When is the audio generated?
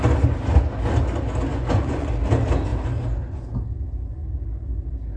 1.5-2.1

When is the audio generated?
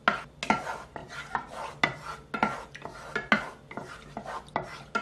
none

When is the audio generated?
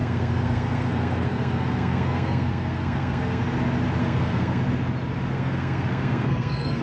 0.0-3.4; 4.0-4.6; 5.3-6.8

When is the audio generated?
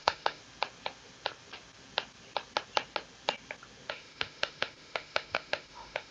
0.0-0.4; 3.9-6.1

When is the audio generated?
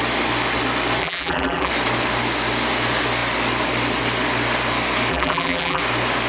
1.0-1.7; 5.1-5.8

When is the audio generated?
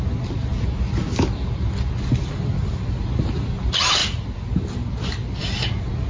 none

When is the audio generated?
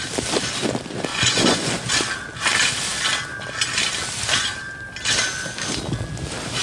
1.1-1.9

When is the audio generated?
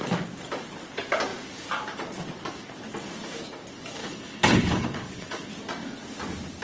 4.0-5.5